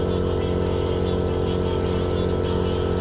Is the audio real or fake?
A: real